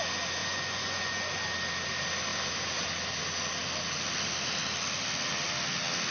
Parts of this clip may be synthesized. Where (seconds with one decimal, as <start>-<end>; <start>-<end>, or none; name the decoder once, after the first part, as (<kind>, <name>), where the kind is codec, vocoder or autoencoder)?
0.4-1.4 (vocoder, Vocos)